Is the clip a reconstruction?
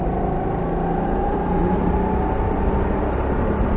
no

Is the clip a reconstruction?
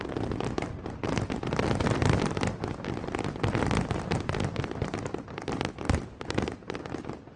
no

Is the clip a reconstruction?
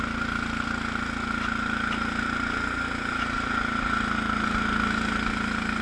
no